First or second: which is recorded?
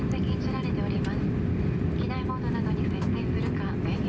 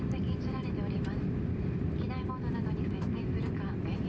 first